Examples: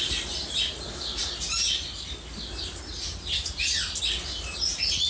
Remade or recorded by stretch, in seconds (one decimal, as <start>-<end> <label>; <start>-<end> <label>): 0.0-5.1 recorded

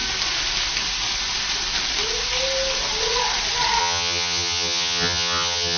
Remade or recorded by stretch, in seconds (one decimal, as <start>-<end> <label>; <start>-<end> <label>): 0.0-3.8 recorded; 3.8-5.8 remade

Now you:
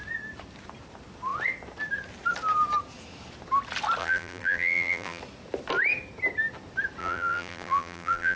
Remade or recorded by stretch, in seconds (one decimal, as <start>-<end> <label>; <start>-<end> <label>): 0.0-4.0 recorded; 4.0-5.2 remade; 5.2-7.0 recorded; 7.0-8.4 remade